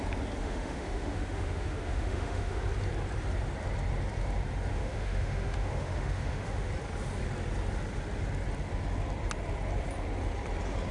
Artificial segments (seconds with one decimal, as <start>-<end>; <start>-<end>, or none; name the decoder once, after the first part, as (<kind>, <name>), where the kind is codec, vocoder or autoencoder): 0.4-2.6 (autoencoder, DAC-VAE); 4.7-6.7